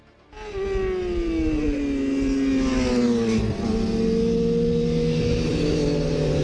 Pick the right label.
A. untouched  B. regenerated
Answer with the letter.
A